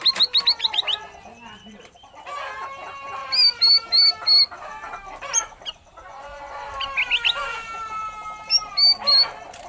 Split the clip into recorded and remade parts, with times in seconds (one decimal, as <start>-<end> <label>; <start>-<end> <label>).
0.0-6.1 recorded; 6.1-6.7 remade; 6.7-9.7 recorded